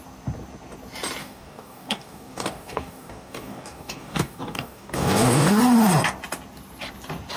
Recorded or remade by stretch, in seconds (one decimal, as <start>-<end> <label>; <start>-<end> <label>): 0.0-1.2 recorded; 1.2-5.6 remade; 5.6-7.4 recorded